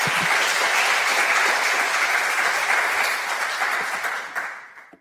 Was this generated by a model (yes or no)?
no